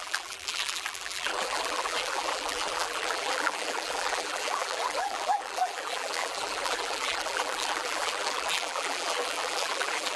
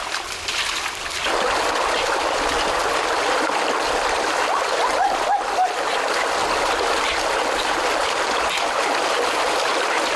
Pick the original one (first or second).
second